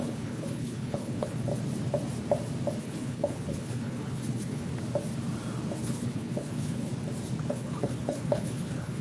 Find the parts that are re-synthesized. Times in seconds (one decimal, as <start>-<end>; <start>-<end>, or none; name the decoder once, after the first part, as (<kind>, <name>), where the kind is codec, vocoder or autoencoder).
0.0-1.5 (codec, HILCodec); 2.8-4.7; 5.8-6.9; 7.5-9.0